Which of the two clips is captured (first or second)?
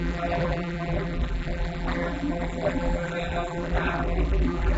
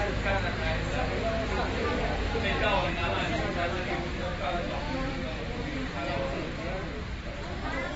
second